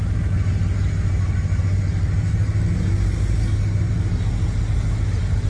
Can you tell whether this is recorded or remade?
recorded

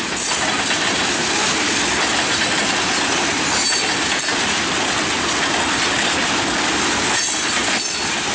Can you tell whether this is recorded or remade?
recorded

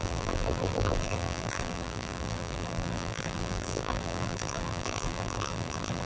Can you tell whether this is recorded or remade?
remade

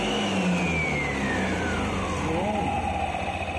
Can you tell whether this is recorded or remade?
recorded